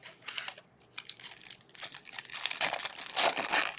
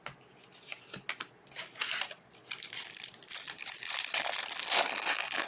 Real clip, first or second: second